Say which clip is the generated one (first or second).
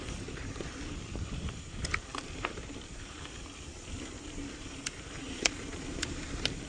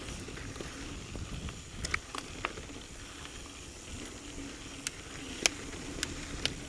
first